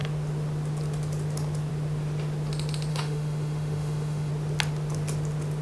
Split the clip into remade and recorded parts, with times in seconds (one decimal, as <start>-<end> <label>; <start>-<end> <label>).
0.0-2.9 recorded; 2.9-4.3 remade; 4.3-5.6 recorded